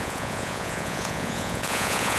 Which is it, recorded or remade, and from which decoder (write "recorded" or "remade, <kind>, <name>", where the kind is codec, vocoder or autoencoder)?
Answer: remade, vocoder, Vocos